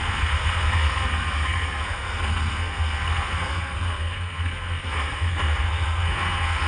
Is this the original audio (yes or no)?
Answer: no